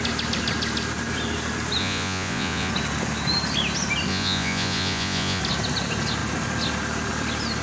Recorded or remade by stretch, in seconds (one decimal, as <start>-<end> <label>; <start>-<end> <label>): 0.0-1.8 recorded; 1.8-2.7 remade; 2.7-4.1 recorded; 4.1-5.4 remade; 5.4-7.6 recorded